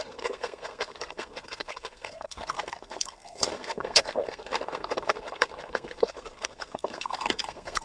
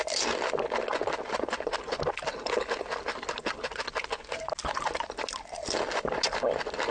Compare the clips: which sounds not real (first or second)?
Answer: first